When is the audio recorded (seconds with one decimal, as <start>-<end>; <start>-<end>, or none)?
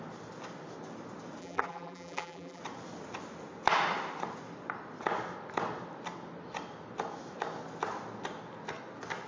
0.0-1.4; 2.6-9.3